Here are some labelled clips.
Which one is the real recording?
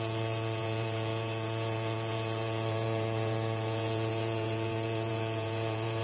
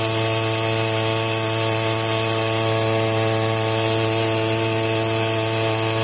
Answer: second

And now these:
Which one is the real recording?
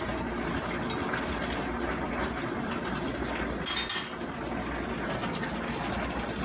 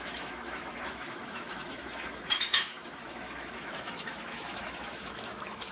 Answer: first